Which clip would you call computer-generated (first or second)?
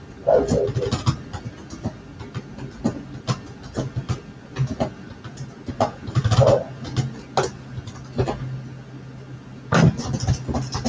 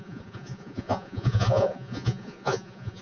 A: second